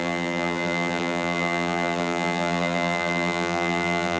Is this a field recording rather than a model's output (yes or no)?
no